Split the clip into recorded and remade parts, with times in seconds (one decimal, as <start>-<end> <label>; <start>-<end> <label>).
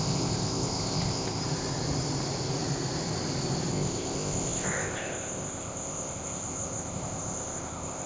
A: 0.0-1.4 remade; 1.4-3.7 recorded; 3.7-8.1 remade